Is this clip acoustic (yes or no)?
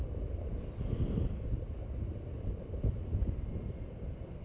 yes